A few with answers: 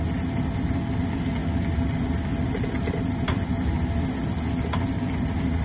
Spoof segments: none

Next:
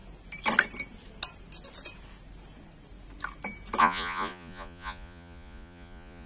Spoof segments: 3.8-6.3

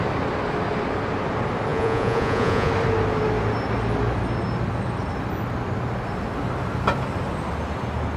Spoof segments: 1.7-2.7

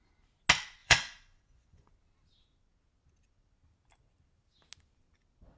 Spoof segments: 0.8-1.9